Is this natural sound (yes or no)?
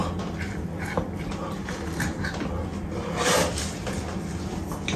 yes